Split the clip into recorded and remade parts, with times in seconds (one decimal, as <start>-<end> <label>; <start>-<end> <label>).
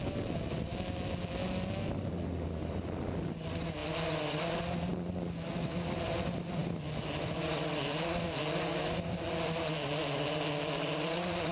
0.0-11.5 recorded